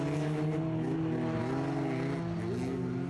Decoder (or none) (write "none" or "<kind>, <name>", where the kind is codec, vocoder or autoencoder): none